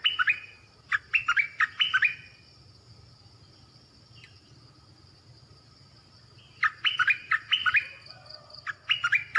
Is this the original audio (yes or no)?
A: yes